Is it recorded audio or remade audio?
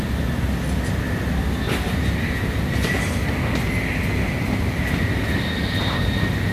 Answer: recorded